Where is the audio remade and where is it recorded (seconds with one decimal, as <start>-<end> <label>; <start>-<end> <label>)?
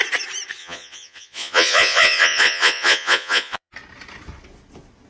0.0-0.6 recorded; 0.6-3.7 remade; 3.7-5.1 recorded